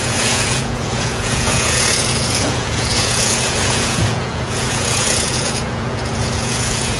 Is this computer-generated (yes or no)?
yes